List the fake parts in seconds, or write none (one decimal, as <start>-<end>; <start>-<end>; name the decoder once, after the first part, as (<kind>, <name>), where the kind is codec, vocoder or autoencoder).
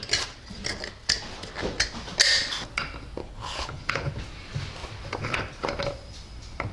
3.2-4.1 (codec, HILCodec)